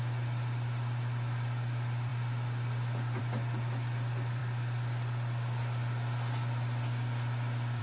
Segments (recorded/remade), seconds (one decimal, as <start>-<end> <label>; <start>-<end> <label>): 0.0-7.8 recorded